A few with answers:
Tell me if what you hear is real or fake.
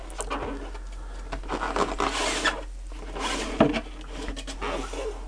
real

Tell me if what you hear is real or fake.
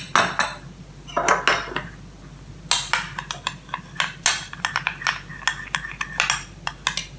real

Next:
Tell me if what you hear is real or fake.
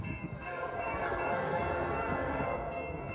fake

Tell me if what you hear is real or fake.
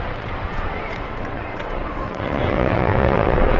fake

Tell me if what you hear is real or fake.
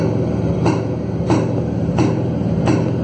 real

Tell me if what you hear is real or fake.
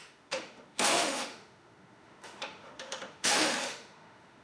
fake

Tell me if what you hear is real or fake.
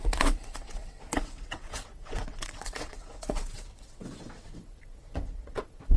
fake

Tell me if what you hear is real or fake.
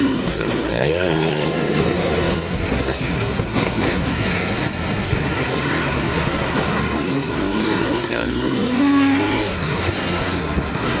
fake